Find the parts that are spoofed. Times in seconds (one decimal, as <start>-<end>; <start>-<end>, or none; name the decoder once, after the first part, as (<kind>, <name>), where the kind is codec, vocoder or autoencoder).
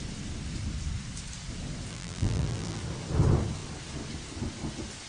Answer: 1.9-2.8 (vocoder, BigVGAN v2)